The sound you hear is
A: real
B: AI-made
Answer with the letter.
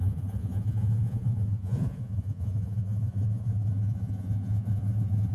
B